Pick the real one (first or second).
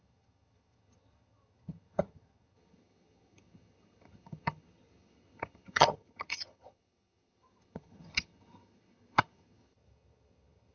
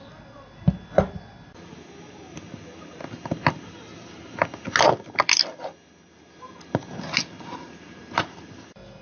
second